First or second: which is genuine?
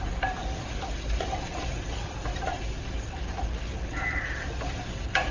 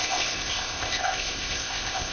first